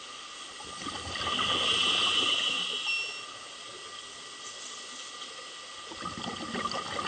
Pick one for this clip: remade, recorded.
recorded